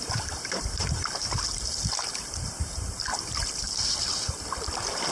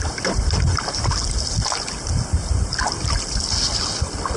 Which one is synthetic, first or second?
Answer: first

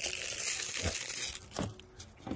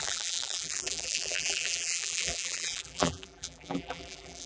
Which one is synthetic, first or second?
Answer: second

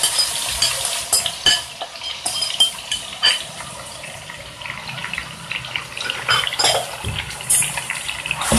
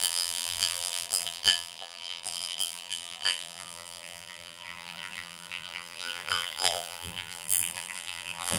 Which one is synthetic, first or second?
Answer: second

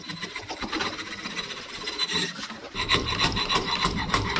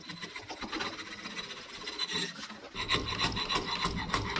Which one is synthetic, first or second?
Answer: first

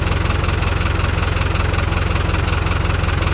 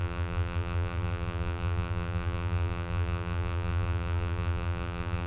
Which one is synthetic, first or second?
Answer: second